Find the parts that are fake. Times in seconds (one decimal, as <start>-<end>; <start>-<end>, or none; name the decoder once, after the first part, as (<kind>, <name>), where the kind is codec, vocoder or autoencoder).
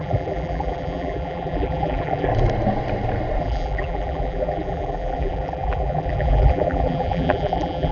0.0-2.3 (vocoder, BigVGAN v2); 3.4-7.9